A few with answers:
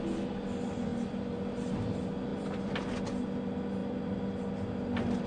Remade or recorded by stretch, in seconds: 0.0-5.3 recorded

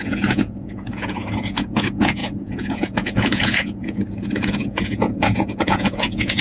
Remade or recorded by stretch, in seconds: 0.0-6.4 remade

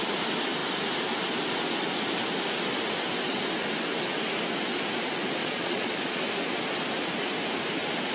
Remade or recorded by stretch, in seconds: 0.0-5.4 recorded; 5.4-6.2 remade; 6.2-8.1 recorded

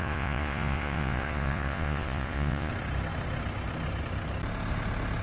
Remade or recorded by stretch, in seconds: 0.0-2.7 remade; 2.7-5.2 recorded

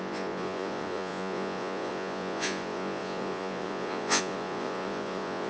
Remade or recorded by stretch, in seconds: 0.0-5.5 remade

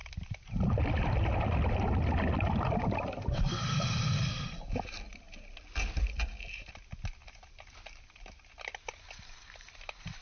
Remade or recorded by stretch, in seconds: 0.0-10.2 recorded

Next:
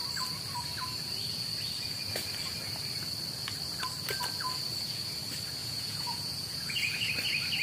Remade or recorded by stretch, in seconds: 0.0-5.6 recorded; 5.6-7.1 remade; 7.1-7.6 recorded